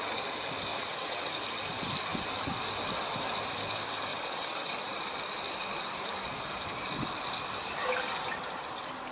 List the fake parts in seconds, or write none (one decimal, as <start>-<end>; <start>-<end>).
0.7-1.3; 4.1-4.7